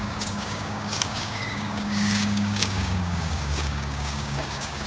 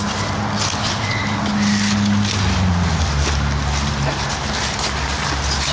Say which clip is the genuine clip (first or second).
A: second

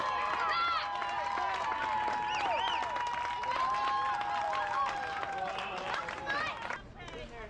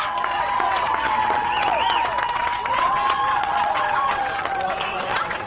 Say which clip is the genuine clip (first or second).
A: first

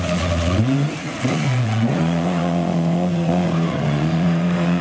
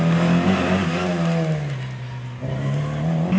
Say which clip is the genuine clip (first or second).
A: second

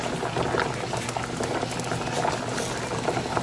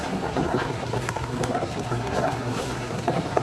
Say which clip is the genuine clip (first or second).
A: first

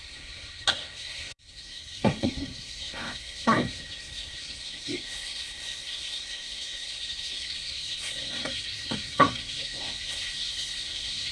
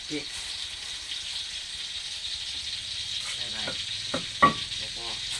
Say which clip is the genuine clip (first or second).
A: second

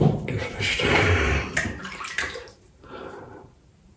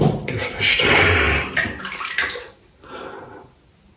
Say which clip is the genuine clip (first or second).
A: second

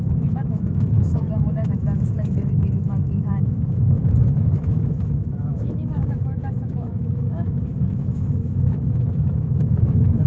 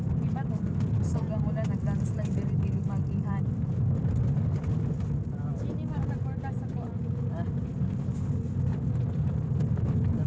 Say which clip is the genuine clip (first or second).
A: second